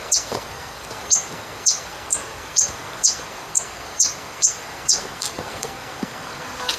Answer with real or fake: fake